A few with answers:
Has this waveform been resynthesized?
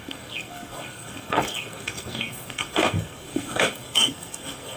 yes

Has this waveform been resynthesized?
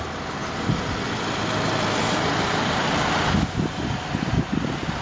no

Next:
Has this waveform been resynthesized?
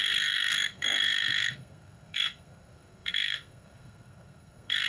yes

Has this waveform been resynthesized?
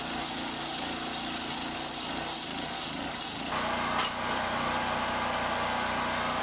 no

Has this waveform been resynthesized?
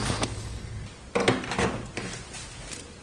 no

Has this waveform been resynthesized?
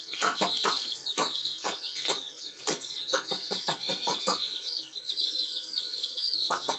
yes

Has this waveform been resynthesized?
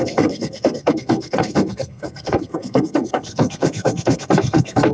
yes